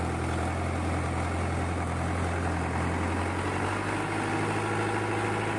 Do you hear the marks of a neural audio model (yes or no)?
no